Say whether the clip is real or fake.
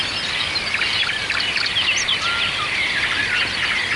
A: real